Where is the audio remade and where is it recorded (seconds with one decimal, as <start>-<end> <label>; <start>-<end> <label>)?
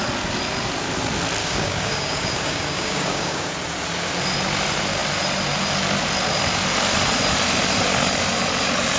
0.0-1.4 recorded; 1.4-3.5 remade; 3.5-9.0 recorded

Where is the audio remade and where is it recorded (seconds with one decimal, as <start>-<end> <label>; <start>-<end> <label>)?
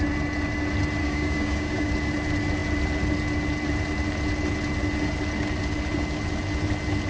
0.0-1.0 recorded; 1.0-1.9 remade; 1.9-7.1 recorded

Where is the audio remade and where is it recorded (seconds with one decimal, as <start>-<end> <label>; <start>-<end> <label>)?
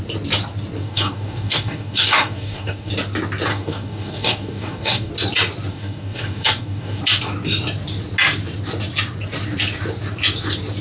0.0-0.8 recorded; 0.8-2.9 remade; 2.9-3.5 recorded; 3.5-5.1 remade; 5.1-5.7 recorded; 5.7-7.0 remade; 7.0-10.8 recorded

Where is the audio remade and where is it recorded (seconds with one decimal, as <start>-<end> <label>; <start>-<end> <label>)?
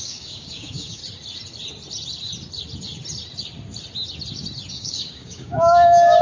0.0-1.0 remade; 1.0-4.7 recorded; 4.7-6.2 remade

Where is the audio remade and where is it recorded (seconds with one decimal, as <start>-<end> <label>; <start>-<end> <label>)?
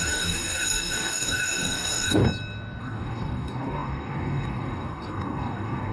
0.0-2.2 remade; 2.2-2.8 recorded; 2.8-5.9 remade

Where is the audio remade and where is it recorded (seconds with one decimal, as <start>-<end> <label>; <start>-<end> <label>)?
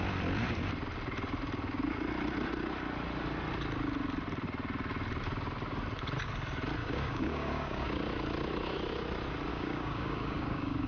0.0-6.8 recorded; 6.8-8.0 remade; 8.0-9.5 recorded; 9.5-10.9 remade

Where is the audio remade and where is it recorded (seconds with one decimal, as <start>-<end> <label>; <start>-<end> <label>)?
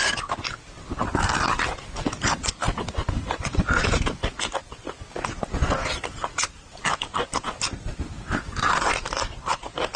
0.0-10.0 recorded